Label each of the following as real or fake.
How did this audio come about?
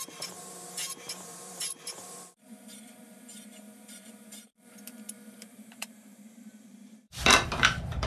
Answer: fake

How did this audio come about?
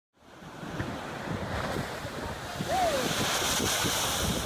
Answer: real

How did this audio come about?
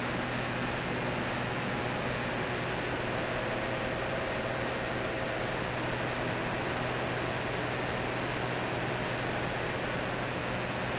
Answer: real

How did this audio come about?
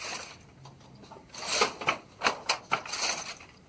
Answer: real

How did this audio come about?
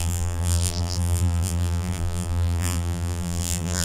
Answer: fake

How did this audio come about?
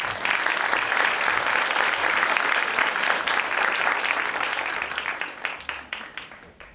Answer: fake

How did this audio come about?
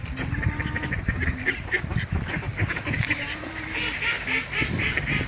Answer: fake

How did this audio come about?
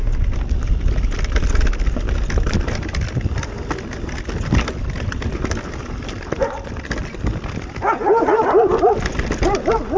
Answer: real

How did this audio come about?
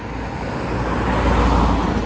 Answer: real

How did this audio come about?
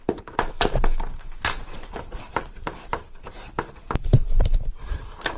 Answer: fake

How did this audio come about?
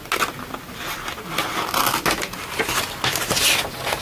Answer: real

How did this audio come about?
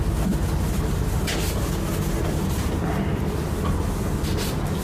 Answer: real